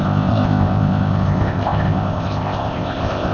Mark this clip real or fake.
fake